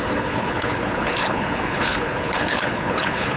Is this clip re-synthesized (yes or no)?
yes